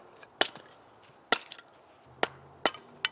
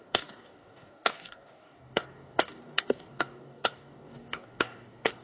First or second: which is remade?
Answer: second